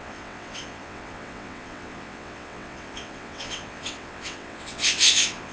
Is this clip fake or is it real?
fake